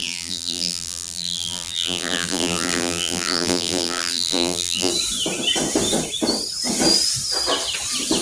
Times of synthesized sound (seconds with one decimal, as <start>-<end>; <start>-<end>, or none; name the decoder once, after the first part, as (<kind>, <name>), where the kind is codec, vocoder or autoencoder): 0.0-4.9 (vocoder, BigVGAN v2)